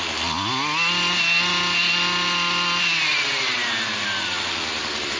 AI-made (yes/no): no